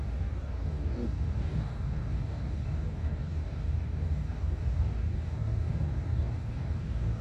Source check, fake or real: fake